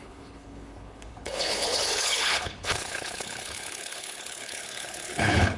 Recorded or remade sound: remade